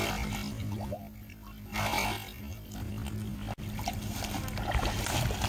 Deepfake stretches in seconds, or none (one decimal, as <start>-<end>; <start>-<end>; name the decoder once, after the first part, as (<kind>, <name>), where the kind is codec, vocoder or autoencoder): none